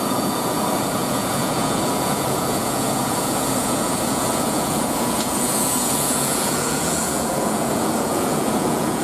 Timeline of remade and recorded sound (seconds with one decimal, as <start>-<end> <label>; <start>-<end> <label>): 0.0-9.0 remade